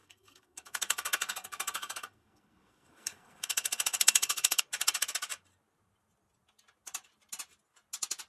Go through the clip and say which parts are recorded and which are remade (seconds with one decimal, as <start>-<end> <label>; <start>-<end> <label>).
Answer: 0.0-4.6 remade; 4.6-8.3 recorded